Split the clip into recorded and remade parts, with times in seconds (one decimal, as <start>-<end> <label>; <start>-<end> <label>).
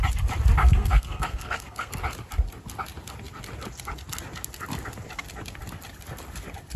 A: 0.0-0.6 recorded; 0.6-1.9 remade; 1.9-6.8 recorded